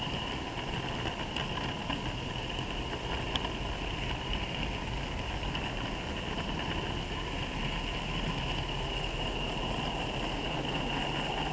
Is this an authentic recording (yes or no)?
yes